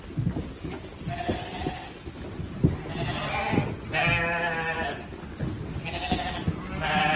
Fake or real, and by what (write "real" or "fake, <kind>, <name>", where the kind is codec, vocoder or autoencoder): real